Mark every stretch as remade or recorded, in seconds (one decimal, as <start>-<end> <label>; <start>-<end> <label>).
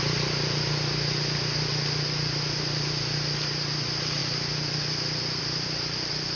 0.0-6.4 recorded